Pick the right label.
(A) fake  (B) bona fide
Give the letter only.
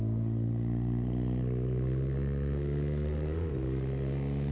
A